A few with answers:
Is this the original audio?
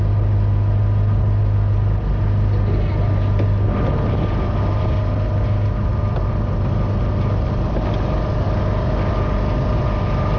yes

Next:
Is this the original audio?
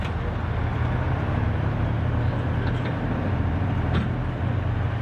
yes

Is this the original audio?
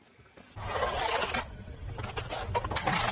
yes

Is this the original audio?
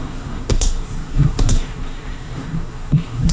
no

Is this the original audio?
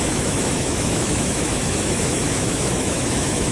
no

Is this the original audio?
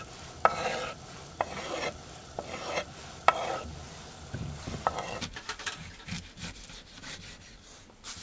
no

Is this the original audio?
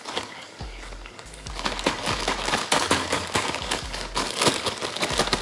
no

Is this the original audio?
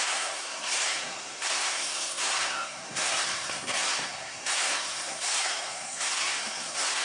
no